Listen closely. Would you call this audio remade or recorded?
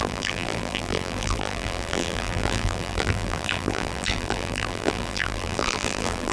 remade